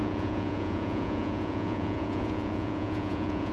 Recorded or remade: remade